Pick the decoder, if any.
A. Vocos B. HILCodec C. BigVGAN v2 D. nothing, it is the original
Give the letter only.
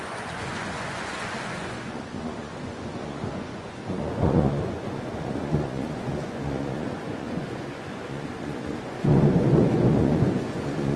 A